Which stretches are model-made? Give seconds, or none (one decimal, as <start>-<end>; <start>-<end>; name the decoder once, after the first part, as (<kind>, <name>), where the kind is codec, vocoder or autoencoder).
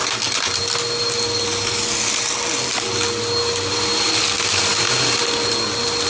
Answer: none